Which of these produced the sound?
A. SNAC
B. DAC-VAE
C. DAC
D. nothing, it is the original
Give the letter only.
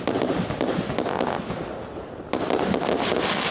D